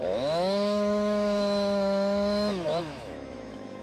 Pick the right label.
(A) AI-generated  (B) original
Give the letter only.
A